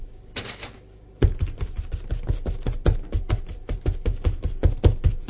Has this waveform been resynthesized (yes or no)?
no